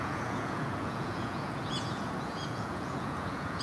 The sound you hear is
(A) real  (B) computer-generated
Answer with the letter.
B